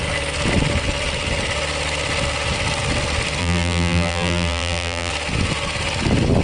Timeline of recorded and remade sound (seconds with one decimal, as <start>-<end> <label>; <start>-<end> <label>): 0.0-3.4 recorded; 3.4-5.1 remade; 5.1-6.4 recorded